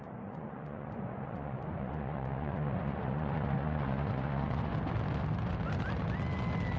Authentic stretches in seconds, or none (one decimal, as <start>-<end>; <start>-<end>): 4.7-6.8